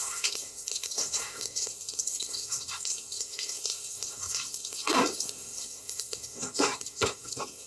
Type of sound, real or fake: fake